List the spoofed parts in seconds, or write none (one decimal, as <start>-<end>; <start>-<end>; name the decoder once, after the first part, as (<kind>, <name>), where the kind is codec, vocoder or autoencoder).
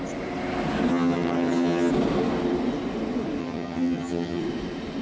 0.9-1.9 (vocoder, HiFi-GAN); 3.4-4.4